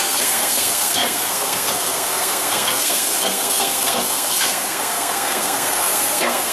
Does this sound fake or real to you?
fake